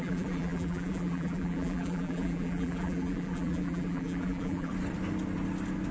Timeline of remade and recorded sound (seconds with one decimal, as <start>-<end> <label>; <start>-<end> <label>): 0.0-4.7 remade; 4.7-5.9 recorded